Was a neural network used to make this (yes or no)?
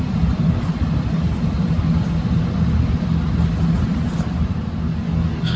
no